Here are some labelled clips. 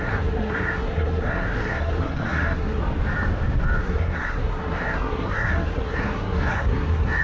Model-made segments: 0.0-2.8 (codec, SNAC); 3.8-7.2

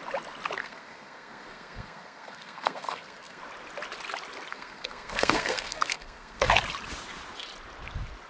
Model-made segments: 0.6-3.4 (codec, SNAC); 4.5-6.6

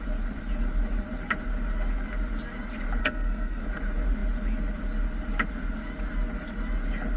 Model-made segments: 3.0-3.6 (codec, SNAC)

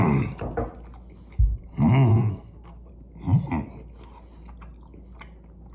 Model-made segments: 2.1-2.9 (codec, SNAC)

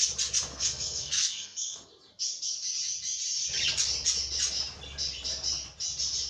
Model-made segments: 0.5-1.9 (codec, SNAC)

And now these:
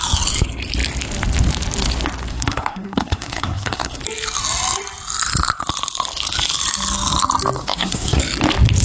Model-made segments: 2.3-4.0 (codec, SNAC); 7.6-8.2